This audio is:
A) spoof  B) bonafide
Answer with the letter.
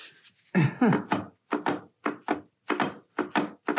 B